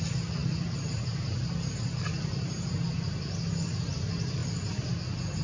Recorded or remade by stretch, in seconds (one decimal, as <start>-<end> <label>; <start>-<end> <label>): 0.0-0.4 recorded; 0.4-2.7 remade; 2.7-5.4 recorded